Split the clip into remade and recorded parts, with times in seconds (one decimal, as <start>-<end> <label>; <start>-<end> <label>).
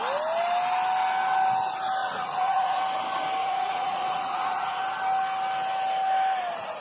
0.0-2.0 recorded; 2.0-2.8 remade; 2.8-3.4 recorded; 3.4-4.8 remade; 4.8-6.8 recorded